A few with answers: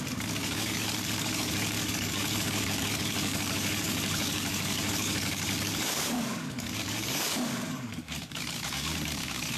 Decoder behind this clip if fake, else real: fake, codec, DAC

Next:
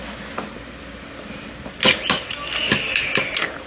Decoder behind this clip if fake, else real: real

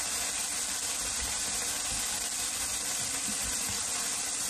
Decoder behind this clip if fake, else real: real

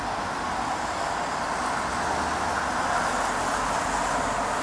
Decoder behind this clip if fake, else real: real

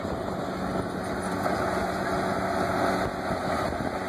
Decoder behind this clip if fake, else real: real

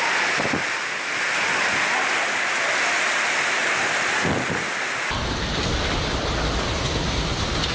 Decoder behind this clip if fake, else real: real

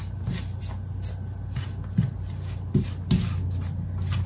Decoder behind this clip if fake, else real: real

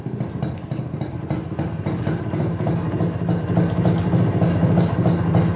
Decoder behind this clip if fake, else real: real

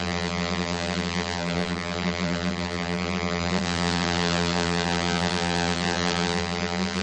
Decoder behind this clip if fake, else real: fake, vocoder, BigVGAN v2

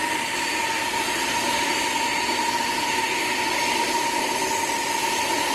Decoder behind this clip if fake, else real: real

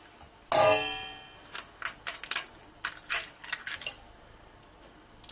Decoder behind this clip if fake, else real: real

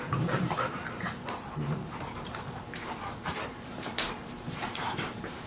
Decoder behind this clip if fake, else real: fake, vocoder, BigVGAN v2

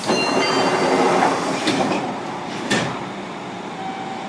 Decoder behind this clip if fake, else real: fake, vocoder, BigVGAN v2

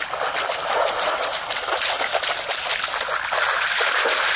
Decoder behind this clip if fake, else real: real